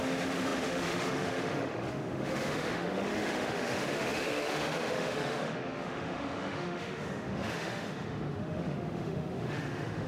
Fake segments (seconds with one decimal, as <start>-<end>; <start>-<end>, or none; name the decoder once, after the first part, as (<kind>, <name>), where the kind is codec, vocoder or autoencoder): 0.0-10.1 (autoencoder, DAC-VAE)